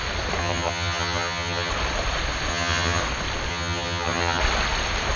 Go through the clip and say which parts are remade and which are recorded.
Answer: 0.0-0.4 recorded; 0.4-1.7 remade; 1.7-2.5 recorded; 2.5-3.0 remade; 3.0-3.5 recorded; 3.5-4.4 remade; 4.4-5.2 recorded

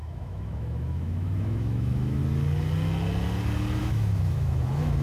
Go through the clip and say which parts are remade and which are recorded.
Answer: 0.0-2.2 remade; 2.2-3.8 recorded; 3.8-5.0 remade

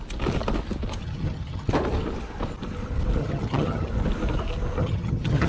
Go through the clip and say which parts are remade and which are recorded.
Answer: 0.0-1.0 recorded; 1.0-1.7 remade; 1.7-3.2 recorded; 3.2-3.9 remade; 3.9-4.8 recorded; 4.8-5.5 remade

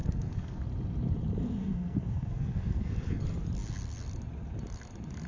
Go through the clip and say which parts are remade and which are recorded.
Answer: 0.0-0.6 remade; 0.6-1.6 recorded; 1.6-3.2 remade; 3.2-5.3 recorded

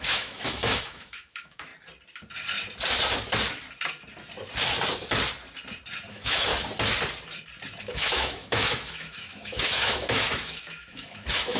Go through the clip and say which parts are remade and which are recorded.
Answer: 0.0-1.7 remade; 1.7-6.1 recorded; 6.1-6.5 remade; 6.5-7.8 recorded; 7.8-11.6 remade

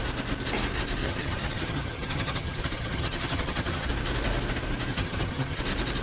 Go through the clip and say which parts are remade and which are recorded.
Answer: 0.0-1.0 recorded; 1.0-3.9 remade; 3.9-4.9 recorded; 4.9-5.6 remade; 5.6-6.0 recorded

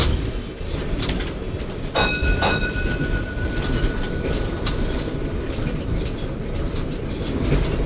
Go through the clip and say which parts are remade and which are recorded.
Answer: 0.0-2.2 recorded; 2.2-4.8 remade; 4.8-7.9 recorded

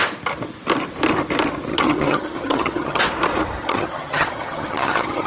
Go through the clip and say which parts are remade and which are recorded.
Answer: 0.0-1.7 recorded; 1.7-3.0 remade; 3.0-3.6 recorded; 3.6-5.3 remade